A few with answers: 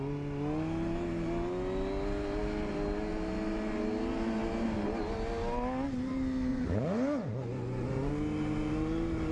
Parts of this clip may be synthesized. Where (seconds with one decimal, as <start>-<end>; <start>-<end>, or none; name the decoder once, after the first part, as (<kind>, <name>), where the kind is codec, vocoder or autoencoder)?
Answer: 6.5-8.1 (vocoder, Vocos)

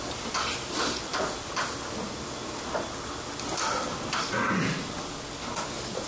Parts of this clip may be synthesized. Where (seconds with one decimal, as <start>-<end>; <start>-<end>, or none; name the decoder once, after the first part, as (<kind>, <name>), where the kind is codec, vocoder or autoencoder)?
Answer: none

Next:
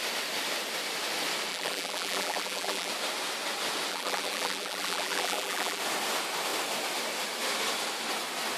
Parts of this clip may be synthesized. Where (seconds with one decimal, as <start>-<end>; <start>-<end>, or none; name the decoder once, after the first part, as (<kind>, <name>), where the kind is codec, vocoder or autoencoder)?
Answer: 1.5-2.9 (vocoder, BigVGAN v2); 3.9-5.8

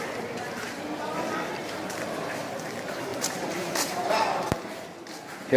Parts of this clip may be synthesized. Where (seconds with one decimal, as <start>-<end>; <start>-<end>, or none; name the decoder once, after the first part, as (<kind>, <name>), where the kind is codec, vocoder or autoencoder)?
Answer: 3.1-4.4 (vocoder, BigVGAN v2)

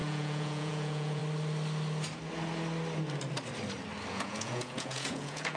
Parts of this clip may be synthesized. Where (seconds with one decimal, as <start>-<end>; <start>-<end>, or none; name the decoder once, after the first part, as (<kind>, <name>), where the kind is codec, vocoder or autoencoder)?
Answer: 0.0-1.2 (vocoder, Vocos); 4.1-5.6